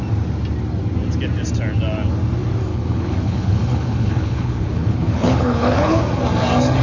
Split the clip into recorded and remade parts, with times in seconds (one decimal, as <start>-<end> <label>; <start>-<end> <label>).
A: 0.0-2.7 recorded; 2.7-6.0 remade; 6.0-6.8 recorded